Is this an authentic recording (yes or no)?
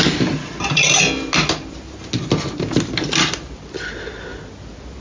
yes